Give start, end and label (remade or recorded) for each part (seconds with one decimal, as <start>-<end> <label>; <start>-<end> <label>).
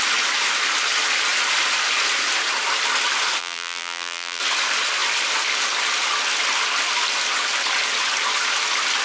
0.0-3.4 recorded; 3.4-4.4 remade; 4.4-9.0 recorded